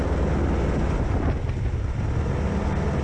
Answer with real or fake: real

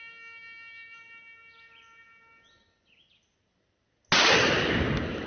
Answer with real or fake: real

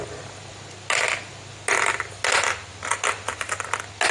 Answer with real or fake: real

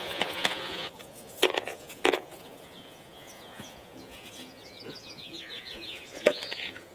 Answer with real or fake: fake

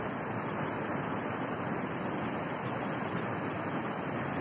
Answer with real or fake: real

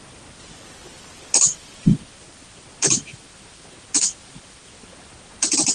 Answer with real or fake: real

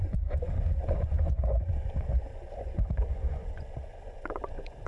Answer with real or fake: fake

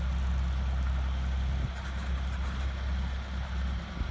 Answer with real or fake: real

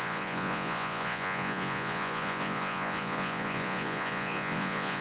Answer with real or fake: fake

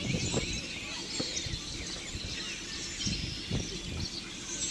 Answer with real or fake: real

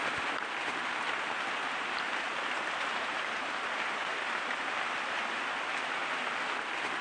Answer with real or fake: real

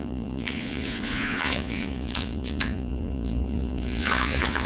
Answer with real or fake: fake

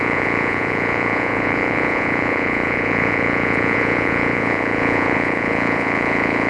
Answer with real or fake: fake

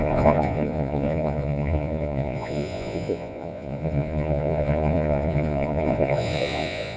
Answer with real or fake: fake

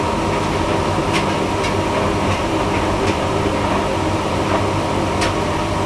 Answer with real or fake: real